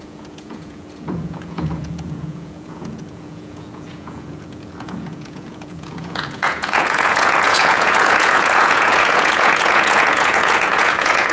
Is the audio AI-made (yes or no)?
yes